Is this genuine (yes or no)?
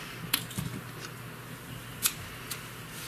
yes